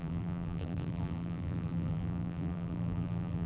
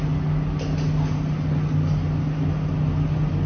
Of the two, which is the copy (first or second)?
first